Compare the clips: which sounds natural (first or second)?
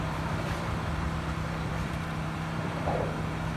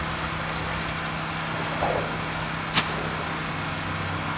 second